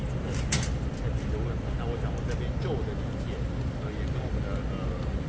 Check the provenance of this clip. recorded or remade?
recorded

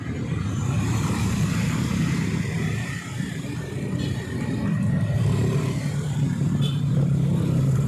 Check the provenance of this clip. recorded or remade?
remade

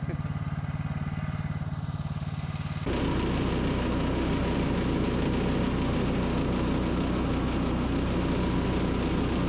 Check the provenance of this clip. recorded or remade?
recorded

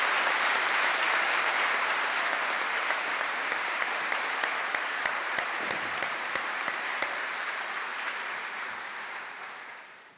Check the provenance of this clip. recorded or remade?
remade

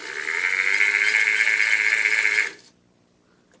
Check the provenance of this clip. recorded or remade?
recorded